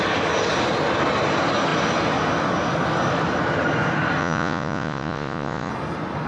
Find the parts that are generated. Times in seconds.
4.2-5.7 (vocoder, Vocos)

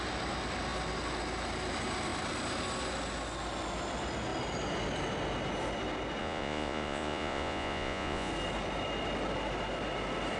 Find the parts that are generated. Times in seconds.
6.2-8.3 (vocoder, Vocos)

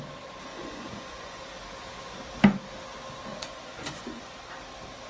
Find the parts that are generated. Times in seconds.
0.5-1.4 (vocoder, Vocos); 3.3-4.3

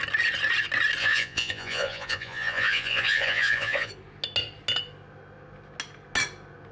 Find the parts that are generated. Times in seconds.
1.0-3.9 (vocoder, Vocos)

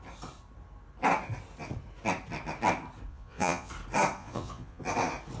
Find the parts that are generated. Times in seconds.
3.1-3.7 (vocoder, Vocos); 4.2-4.8